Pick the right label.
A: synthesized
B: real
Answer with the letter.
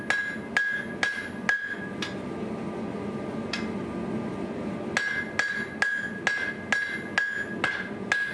B